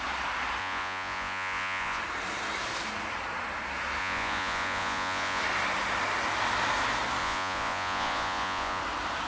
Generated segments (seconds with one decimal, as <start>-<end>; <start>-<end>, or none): 0.6-2.0; 4.0-5.4; 7.2-8.8